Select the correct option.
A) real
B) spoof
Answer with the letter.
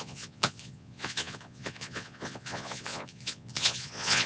B